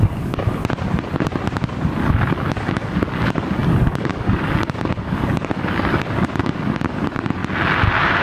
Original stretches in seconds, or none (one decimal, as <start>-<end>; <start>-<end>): 0.6-2.0; 7.4-8.2